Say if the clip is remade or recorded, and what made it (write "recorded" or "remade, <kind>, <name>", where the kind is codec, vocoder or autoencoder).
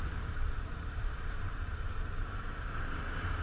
remade, vocoder, BigVGAN v2